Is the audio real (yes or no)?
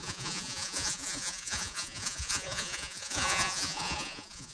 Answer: no